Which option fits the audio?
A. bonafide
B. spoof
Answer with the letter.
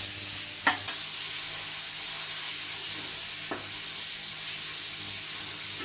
A